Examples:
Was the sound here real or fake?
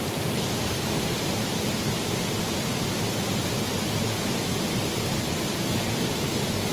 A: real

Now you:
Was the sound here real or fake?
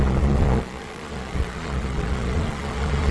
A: fake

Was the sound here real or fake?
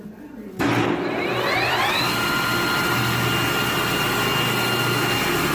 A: real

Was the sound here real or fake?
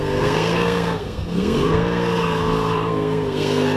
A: fake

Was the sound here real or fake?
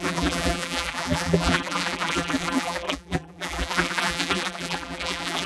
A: fake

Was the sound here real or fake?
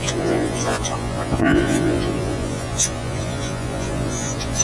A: fake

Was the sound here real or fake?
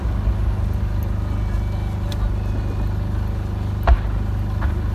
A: real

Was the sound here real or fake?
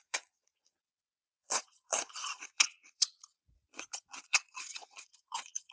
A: fake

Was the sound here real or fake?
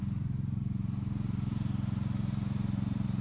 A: fake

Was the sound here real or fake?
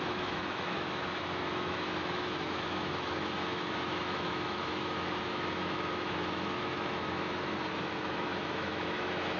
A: fake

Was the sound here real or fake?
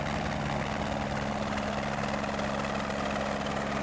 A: real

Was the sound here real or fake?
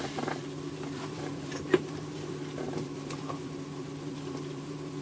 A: fake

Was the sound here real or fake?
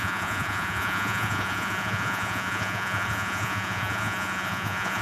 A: fake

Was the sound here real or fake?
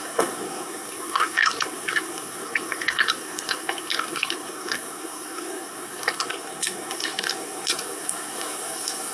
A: fake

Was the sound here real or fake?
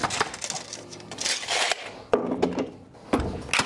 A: real